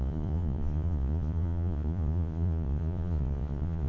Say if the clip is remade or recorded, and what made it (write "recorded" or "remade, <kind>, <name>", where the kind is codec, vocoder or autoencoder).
remade, vocoder, Vocos